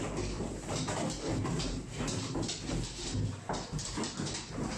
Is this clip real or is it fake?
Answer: fake